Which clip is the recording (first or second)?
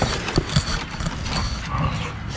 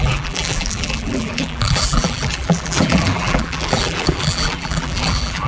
first